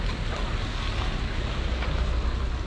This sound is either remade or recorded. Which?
recorded